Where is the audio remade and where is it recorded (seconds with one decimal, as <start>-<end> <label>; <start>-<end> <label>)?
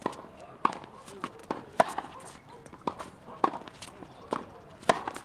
0.0-5.2 recorded